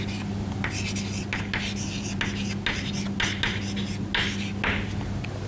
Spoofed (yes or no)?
no